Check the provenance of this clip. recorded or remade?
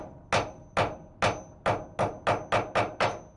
recorded